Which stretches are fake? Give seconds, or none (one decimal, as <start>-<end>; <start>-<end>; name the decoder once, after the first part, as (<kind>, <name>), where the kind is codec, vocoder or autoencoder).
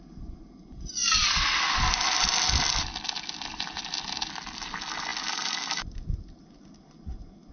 none